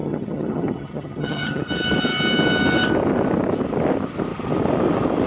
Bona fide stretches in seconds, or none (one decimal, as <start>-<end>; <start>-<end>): 1.6-5.3